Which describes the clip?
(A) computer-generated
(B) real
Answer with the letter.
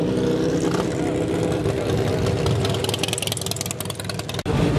B